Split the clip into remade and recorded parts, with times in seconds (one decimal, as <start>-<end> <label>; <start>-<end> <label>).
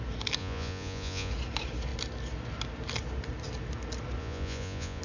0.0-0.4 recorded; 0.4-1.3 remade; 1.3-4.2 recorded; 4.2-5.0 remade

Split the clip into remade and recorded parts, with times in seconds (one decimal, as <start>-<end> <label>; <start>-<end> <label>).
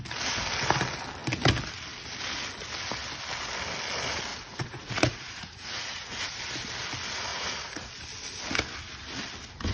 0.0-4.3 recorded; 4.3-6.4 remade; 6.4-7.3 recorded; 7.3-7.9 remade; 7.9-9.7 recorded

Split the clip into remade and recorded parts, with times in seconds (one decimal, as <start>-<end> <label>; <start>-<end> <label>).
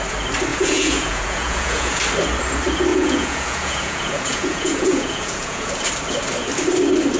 0.0-0.5 recorded; 0.5-2.0 remade; 2.0-2.9 recorded; 2.9-5.7 remade; 5.7-7.2 recorded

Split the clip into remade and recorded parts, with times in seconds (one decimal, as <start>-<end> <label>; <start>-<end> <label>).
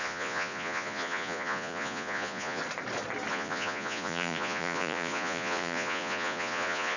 0.0-2.6 remade; 2.6-3.3 recorded; 3.3-7.0 remade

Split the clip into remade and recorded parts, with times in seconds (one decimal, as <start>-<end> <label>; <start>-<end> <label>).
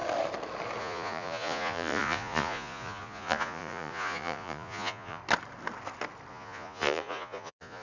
0.0-0.8 recorded; 0.8-5.2 remade; 5.2-6.3 recorded; 6.3-7.8 remade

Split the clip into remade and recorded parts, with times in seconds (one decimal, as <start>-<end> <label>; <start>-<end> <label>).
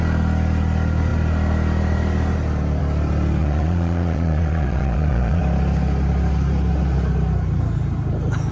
0.0-3.4 recorded; 3.4-5.4 remade; 5.4-8.5 recorded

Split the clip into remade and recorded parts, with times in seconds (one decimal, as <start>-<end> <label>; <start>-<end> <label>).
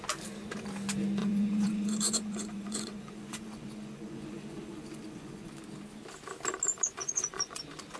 0.0-1.2 recorded; 1.2-5.5 remade; 5.5-7.0 recorded; 7.0-7.6 remade; 7.6-8.0 recorded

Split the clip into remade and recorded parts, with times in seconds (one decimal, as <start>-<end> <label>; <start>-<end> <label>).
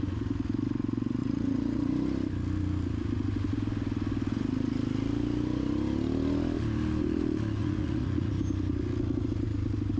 0.0-1.2 recorded; 1.2-1.9 remade; 1.9-7.6 recorded; 7.6-8.3 remade; 8.3-10.0 recorded